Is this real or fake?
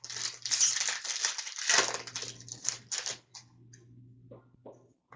real